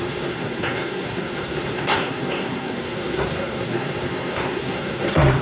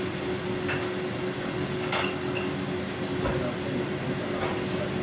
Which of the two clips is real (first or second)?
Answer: second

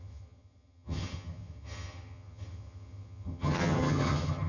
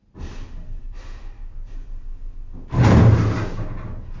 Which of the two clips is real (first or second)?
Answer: second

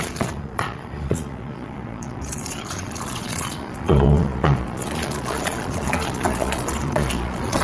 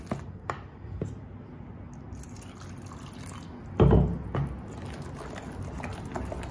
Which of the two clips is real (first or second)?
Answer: second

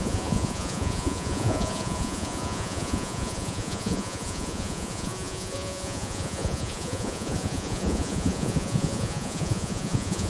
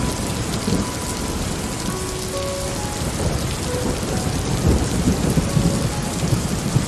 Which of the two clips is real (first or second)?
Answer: second